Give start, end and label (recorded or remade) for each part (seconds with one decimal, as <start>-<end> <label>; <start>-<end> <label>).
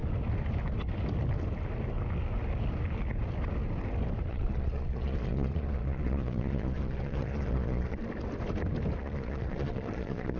0.0-4.3 recorded; 4.3-8.0 remade; 8.0-9.0 recorded; 9.0-10.4 remade